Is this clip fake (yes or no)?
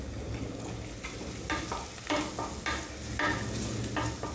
no